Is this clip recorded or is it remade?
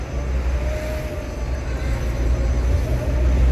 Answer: recorded